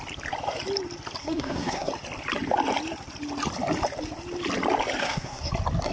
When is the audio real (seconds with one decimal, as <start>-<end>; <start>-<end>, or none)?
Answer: 0.0-1.2; 1.9-5.0; 5.5-5.9

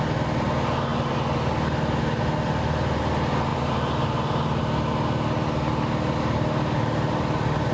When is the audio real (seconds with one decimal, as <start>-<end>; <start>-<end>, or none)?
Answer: 0.0-3.5; 4.6-7.7

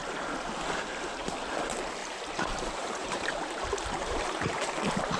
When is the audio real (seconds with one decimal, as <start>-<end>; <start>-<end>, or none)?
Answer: 0.0-2.0; 4.7-5.2

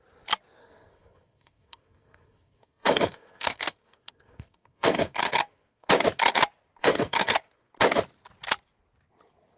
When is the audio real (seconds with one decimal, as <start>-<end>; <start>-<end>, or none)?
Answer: 0.0-0.6; 5.9-6.8; 7.7-9.6

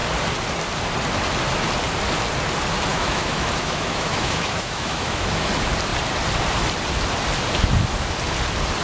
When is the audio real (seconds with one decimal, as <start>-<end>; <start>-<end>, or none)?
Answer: 0.0-2.9; 5.5-8.8